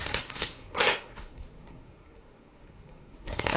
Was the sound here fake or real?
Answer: fake